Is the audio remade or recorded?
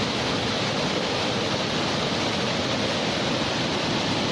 recorded